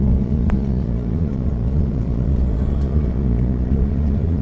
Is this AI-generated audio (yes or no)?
yes